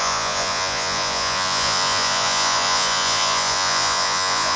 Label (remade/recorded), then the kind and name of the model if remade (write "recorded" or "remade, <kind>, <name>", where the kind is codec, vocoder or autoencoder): remade, vocoder, Vocos